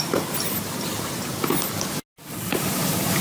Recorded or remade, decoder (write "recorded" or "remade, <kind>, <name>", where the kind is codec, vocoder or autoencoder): recorded